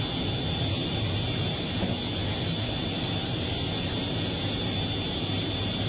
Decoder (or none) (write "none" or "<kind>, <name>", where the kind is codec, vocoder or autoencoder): none